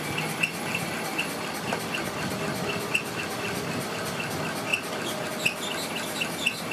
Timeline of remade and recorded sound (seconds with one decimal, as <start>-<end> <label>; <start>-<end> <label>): 0.0-6.7 recorded